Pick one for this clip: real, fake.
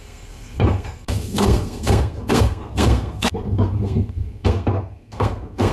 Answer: fake